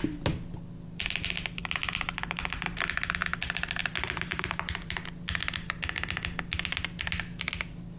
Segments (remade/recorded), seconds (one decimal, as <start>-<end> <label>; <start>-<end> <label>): 0.0-4.3 recorded; 4.3-4.9 remade; 4.9-8.0 recorded